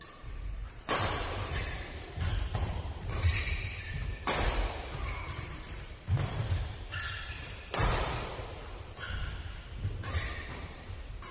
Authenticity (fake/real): fake